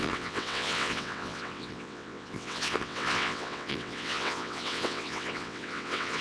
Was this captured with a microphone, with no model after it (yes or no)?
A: no